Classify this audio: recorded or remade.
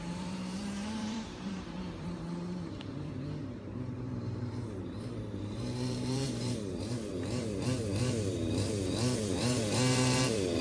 remade